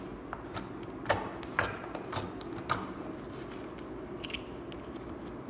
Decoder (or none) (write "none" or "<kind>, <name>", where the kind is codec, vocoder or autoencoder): none